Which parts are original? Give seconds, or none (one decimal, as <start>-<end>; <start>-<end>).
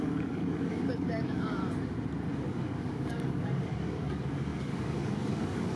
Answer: 1.6-2.5